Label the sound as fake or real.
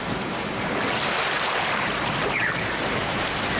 fake